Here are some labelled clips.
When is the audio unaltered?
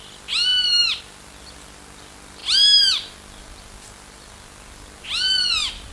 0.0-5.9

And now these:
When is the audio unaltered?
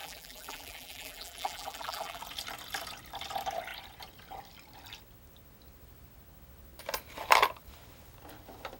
2.2-8.8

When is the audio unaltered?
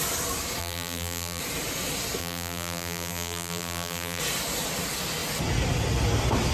0.0-0.6; 1.4-2.2; 4.2-6.5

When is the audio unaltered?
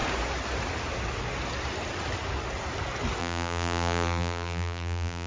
0.0-3.2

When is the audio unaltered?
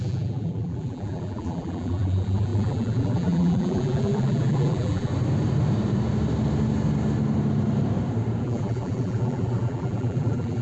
5.1-8.4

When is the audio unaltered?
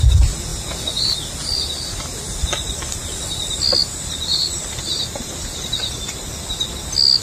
0.0-3.8; 4.6-7.2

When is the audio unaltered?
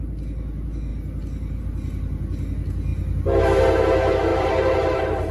0.0-4.3